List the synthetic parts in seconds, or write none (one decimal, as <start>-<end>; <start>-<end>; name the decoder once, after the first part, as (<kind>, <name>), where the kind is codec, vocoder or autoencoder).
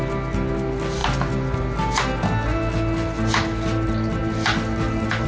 none